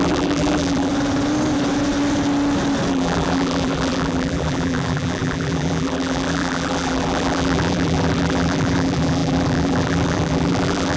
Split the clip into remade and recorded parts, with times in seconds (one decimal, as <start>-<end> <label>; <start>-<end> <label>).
0.0-0.9 remade; 0.9-2.9 recorded; 2.9-11.0 remade